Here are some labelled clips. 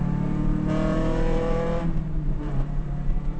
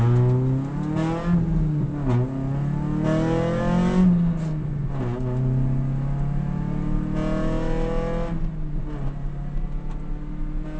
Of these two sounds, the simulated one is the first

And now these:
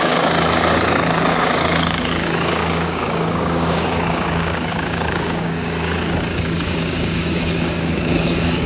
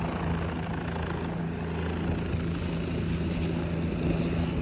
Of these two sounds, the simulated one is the first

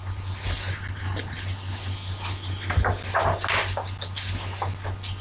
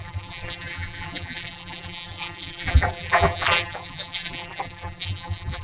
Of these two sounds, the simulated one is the second